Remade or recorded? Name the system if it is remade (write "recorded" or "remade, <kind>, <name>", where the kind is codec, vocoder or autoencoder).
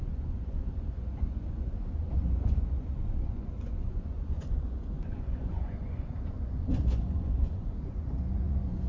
remade, vocoder, Vocos